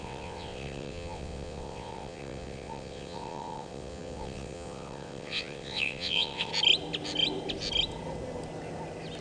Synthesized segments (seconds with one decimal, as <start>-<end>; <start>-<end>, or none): 0.0-6.5